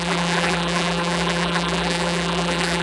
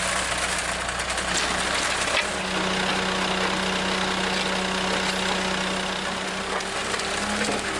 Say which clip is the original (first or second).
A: second